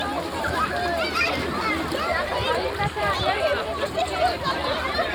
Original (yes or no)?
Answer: no